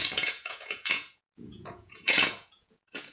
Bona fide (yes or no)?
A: no